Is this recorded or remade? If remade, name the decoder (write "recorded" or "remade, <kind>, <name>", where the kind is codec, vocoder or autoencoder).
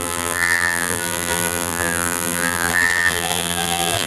remade, vocoder, BigVGAN v2